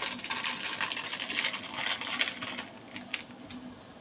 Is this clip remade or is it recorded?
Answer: recorded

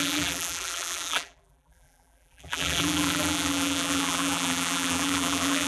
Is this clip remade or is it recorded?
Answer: remade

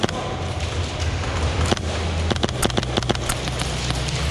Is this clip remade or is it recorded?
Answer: recorded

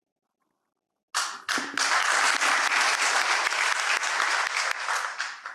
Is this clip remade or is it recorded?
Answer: recorded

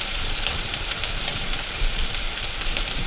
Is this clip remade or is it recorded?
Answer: remade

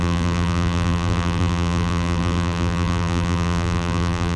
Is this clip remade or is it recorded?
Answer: remade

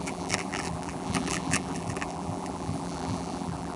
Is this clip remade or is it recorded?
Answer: remade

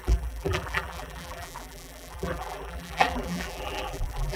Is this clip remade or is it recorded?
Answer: remade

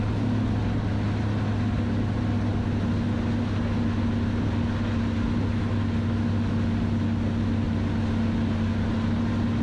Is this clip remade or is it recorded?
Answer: recorded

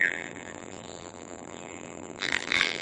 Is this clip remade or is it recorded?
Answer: remade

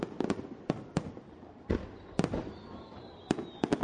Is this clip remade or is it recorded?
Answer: recorded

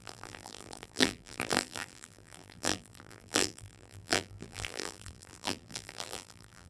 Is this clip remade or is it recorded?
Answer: remade